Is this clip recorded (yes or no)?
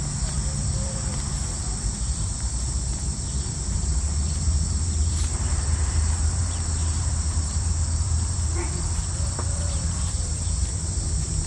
no